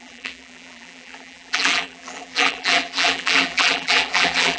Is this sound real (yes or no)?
no